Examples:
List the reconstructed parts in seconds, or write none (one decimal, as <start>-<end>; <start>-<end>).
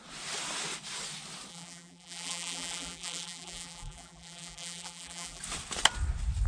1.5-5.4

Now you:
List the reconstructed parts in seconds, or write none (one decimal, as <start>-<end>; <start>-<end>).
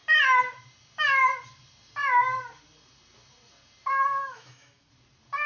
4.2-4.9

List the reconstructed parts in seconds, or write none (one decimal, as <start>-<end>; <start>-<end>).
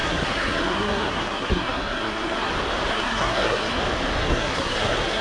0.0-2.5; 2.9-3.8; 4.2-5.2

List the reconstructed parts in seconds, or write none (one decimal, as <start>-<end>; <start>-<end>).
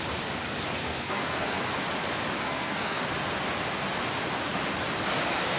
0.8-1.6; 2.4-3.0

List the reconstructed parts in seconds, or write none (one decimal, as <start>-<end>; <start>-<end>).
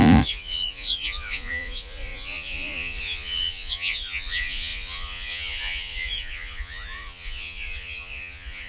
0.0-8.7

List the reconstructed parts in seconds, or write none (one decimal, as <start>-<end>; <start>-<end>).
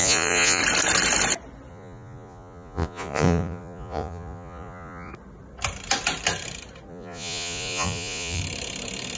0.0-0.6; 1.7-5.1; 6.9-8.4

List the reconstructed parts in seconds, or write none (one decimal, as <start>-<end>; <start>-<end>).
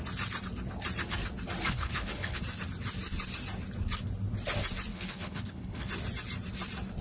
1.7-2.4; 4.9-5.9